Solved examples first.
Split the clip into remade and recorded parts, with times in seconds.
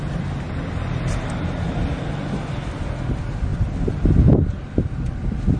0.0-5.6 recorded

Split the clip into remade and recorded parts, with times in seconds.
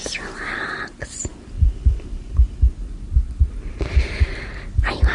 0.0-5.1 recorded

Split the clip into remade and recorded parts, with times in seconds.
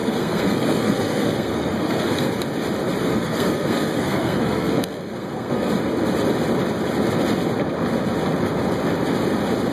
0.0-2.3 remade; 2.3-3.1 recorded; 3.1-5.7 remade; 5.7-9.7 recorded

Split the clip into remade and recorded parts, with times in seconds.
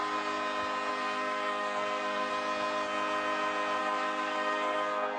0.0-0.9 recorded; 0.9-2.3 remade; 2.3-3.8 recorded; 3.8-5.2 remade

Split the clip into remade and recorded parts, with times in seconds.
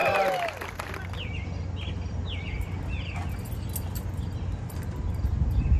0.0-5.8 recorded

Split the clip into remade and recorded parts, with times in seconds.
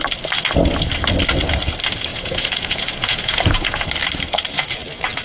0.0-2.1 recorded; 2.1-3.8 remade; 3.8-5.2 recorded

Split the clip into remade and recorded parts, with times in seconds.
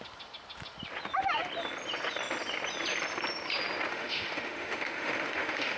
0.0-3.9 recorded; 3.9-5.8 remade